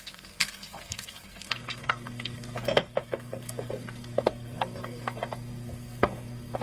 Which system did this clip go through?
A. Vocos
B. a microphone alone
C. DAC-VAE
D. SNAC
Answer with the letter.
D